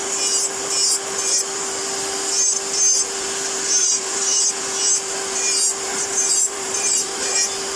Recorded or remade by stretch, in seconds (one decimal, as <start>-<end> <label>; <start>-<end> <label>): 0.0-3.8 recorded; 3.8-4.4 remade; 4.4-5.7 recorded; 5.7-7.3 remade; 7.3-7.8 recorded